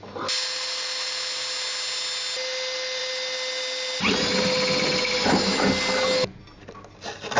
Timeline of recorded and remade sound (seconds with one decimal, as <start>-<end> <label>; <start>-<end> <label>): 0.0-7.4 recorded